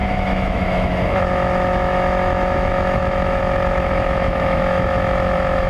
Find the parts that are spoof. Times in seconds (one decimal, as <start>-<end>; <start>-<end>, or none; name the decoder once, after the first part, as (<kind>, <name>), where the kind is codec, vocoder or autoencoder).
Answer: 0.0-5.7 (autoencoder, DAC-VAE)